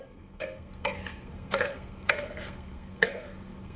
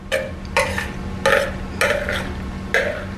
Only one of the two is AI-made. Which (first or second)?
first